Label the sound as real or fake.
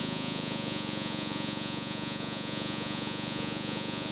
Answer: fake